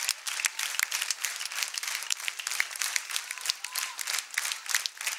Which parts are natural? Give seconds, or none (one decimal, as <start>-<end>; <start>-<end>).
0.0-0.5; 3.6-5.2